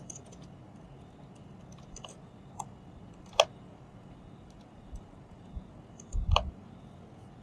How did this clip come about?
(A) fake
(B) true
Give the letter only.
B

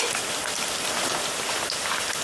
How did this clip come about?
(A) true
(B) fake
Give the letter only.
A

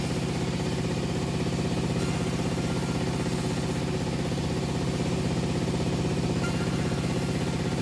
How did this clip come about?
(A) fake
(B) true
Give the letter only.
B